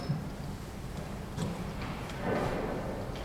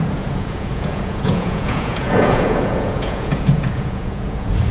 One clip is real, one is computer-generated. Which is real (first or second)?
first